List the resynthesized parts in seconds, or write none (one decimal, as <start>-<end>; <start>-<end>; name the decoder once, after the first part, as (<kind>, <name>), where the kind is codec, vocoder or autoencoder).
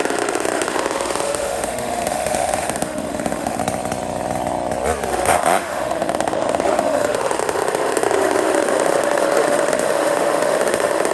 0.0-3.6 (autoencoder, DAC-VAE); 5.1-11.1